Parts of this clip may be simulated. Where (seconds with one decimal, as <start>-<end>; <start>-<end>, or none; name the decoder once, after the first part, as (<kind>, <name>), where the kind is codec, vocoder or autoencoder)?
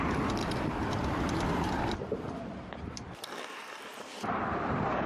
0.4-3.5 (vocoder, BigVGAN v2); 3.9-4.4